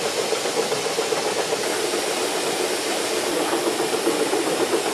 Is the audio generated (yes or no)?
no